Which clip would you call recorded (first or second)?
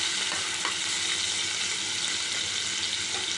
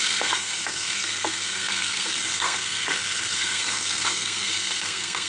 first